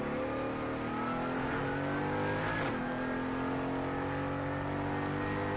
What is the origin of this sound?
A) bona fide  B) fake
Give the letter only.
A